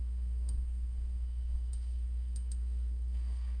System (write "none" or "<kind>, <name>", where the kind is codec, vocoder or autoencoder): codec, SNAC